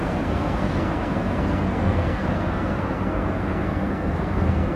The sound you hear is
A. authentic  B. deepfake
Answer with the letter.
B